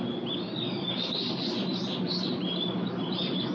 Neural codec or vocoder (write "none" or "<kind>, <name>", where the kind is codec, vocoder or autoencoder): none